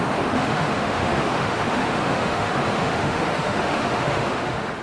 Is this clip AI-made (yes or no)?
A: yes